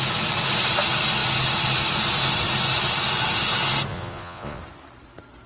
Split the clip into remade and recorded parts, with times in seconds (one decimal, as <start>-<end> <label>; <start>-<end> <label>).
0.0-3.9 recorded; 3.9-4.6 remade; 4.6-5.5 recorded